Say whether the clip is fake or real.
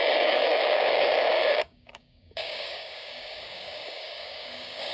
fake